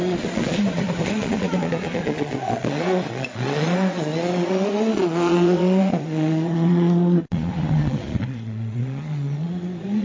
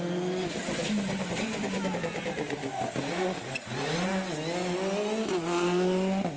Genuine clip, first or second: second